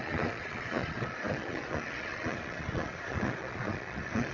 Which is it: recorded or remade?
remade